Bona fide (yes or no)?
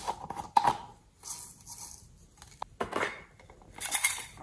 yes